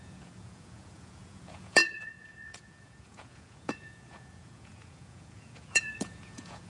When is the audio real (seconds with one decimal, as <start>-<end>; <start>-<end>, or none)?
none